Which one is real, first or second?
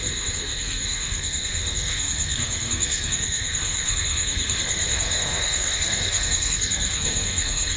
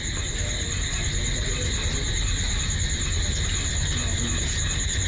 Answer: second